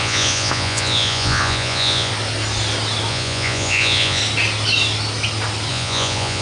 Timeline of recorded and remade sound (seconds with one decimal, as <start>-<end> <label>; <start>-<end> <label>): 0.0-2.1 remade; 2.1-3.1 recorded; 3.1-4.2 remade; 4.2-5.7 recorded; 5.7-6.4 remade